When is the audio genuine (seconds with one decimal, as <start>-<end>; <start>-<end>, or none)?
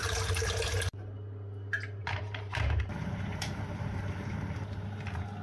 0.0-2.0; 4.1-5.4